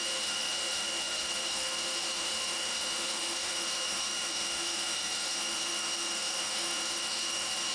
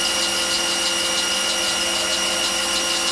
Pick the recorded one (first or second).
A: second